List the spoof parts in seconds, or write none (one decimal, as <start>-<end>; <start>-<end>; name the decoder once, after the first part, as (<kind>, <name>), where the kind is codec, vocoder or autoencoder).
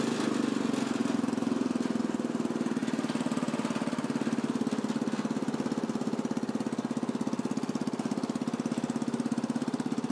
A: none